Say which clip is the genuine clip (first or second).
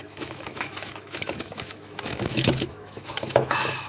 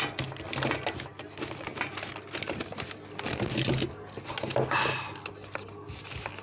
second